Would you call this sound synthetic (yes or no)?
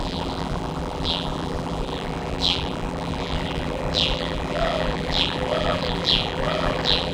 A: yes